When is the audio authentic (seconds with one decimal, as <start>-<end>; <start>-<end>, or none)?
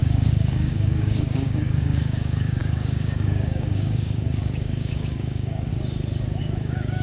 5.7-6.4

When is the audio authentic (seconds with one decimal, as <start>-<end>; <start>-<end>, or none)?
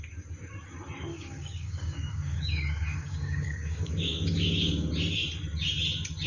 0.0-1.1; 4.9-6.3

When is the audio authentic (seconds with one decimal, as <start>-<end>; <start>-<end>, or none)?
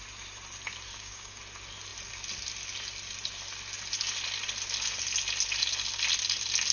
0.0-0.9; 1.4-6.7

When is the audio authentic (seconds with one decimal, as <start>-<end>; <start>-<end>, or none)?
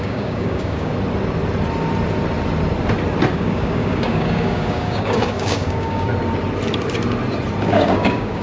0.9-3.3; 6.1-7.6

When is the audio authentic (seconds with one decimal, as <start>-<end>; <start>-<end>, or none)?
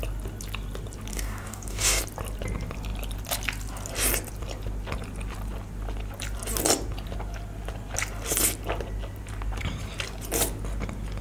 0.0-1.1; 2.0-11.2